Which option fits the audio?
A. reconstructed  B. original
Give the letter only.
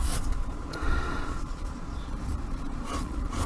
A